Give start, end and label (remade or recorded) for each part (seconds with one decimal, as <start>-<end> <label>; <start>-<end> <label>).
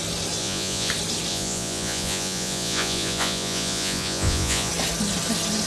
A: 0.0-0.4 recorded; 0.4-0.9 remade; 0.9-1.3 recorded; 1.3-4.7 remade; 4.7-5.7 recorded